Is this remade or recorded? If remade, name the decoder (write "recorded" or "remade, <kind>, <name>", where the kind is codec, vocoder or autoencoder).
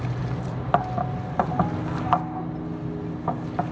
recorded